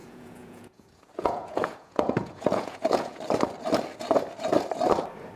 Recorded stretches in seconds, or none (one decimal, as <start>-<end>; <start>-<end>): 3.2-5.4